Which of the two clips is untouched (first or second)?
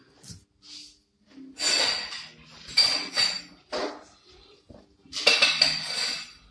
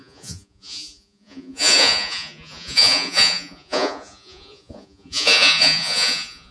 first